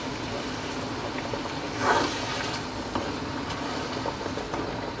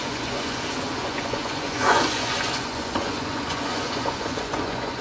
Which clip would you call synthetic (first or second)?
second